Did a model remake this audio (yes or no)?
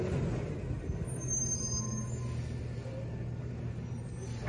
no